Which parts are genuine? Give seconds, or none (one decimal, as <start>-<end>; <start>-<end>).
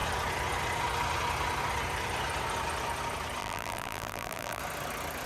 0.0-3.4; 4.6-5.3